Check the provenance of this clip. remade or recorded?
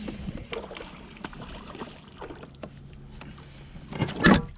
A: recorded